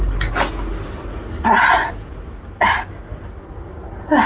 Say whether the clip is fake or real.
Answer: real